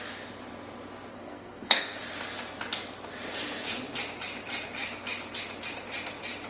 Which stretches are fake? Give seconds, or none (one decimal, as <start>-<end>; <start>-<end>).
1.1-2.0